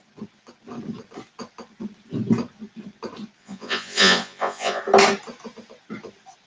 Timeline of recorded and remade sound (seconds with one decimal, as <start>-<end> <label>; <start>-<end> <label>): 0.0-3.4 recorded; 3.4-4.8 remade; 4.8-6.5 recorded